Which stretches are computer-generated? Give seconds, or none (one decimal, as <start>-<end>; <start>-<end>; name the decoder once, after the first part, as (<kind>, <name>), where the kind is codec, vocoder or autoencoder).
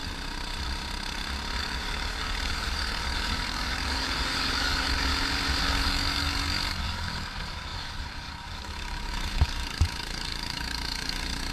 1.6-5.1 (codec, DAC); 5.6-11.5